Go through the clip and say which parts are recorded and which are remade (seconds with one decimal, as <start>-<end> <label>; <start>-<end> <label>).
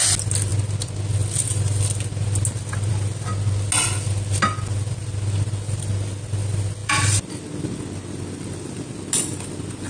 0.0-6.8 recorded; 6.8-7.3 remade; 7.3-9.9 recorded